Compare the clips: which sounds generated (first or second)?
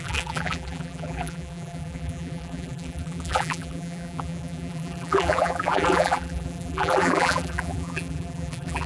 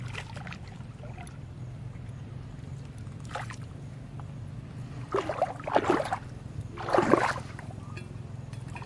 first